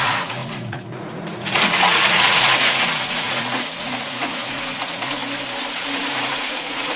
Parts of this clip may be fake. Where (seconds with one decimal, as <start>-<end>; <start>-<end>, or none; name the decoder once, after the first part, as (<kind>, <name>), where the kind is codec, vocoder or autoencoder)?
0.0-5.2 (vocoder, Vocos); 6.1-7.0